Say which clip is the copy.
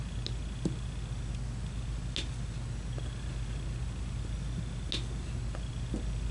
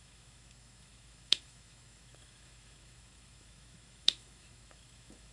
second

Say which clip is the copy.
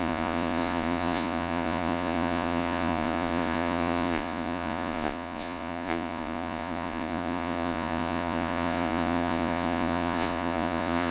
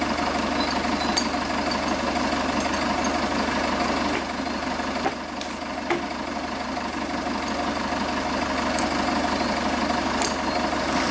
first